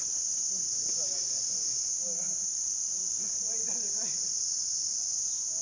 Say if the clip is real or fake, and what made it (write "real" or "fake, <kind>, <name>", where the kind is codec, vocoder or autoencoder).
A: real